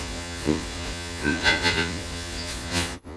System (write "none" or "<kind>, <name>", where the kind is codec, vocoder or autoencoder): vocoder, Vocos